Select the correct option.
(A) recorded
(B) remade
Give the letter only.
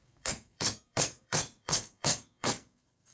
B